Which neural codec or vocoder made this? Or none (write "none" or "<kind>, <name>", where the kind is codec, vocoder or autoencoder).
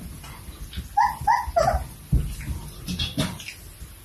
none